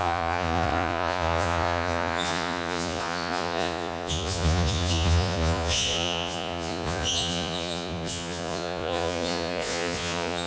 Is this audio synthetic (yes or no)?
yes